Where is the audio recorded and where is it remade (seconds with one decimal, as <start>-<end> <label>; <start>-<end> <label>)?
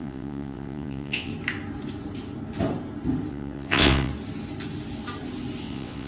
0.0-1.3 remade; 1.3-3.3 recorded; 3.3-4.1 remade; 4.1-5.6 recorded; 5.6-6.1 remade